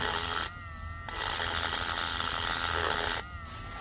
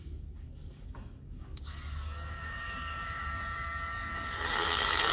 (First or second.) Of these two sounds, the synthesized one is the second